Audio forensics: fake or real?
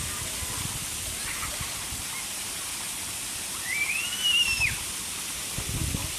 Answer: real